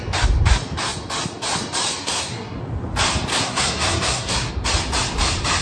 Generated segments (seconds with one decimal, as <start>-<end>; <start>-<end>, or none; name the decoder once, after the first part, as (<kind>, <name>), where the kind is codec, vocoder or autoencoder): 2.0-2.6 (codec, SNAC); 3.3-4.5

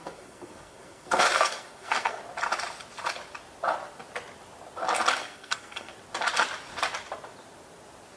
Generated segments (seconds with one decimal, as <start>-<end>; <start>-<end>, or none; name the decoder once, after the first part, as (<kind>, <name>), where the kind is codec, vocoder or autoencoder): 0.0-2.2 (codec, SNAC); 5.2-5.9

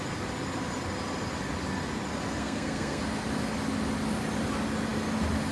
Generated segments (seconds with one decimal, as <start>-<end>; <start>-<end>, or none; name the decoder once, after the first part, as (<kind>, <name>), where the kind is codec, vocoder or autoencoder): 2.4-3.0 (codec, SNAC)